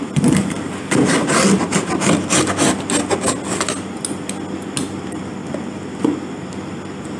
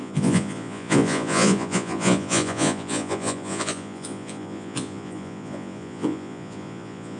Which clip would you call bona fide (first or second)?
first